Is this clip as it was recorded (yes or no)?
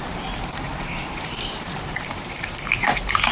no